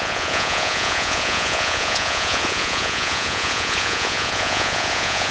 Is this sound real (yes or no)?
no